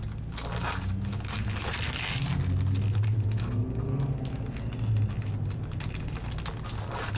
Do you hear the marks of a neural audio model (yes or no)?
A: no